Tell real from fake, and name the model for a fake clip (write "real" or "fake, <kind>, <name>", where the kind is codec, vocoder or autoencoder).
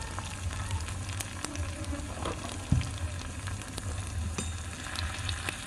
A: real